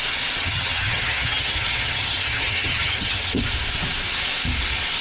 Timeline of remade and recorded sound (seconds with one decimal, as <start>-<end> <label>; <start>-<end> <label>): 0.0-0.4 recorded; 0.4-3.4 remade; 3.4-5.0 recorded

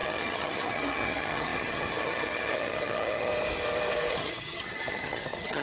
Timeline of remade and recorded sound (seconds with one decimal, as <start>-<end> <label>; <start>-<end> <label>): 0.0-3.3 remade; 3.3-4.1 recorded; 4.1-5.6 remade